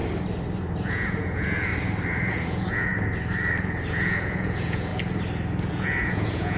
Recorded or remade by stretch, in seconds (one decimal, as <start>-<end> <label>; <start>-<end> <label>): 0.0-0.6 recorded; 0.6-1.7 remade; 1.7-2.3 recorded; 2.3-2.9 remade; 2.9-3.9 recorded; 3.9-4.9 remade; 4.9-5.7 recorded; 5.7-6.6 remade